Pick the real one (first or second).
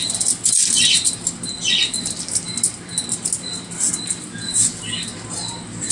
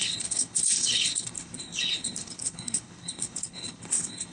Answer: first